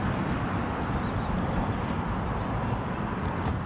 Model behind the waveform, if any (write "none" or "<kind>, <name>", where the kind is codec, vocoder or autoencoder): vocoder, BigVGAN v2